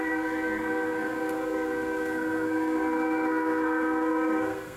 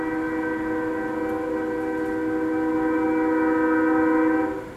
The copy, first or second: first